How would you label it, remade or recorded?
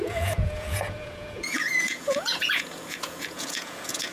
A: remade